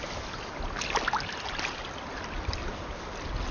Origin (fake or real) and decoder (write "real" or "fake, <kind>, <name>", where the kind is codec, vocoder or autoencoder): real